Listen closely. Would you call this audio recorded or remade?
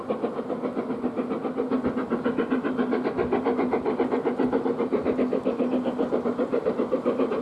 recorded